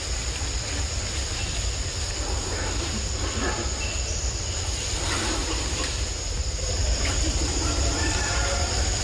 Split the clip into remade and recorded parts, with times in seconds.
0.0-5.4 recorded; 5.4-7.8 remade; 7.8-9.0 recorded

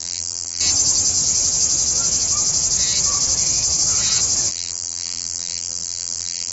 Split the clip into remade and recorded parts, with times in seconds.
0.0-0.6 remade; 0.6-4.5 recorded; 4.5-6.5 remade

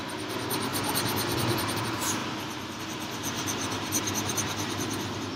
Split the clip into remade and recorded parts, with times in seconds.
0.0-0.7 recorded; 0.7-1.8 remade; 1.8-2.2 recorded; 2.2-2.8 remade; 2.8-5.4 recorded